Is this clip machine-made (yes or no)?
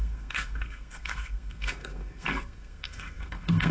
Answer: yes